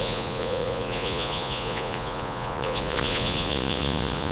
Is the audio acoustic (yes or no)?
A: no